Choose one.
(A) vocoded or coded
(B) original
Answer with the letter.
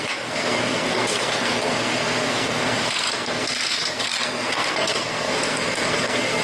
A